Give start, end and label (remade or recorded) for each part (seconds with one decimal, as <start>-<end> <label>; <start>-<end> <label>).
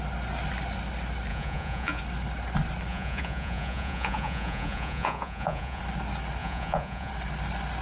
0.0-1.3 recorded; 1.3-2.0 remade; 2.0-2.9 recorded; 2.9-5.8 remade; 5.8-6.4 recorded; 6.4-7.1 remade; 7.1-7.8 recorded